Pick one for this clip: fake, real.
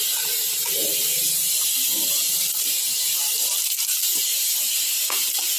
fake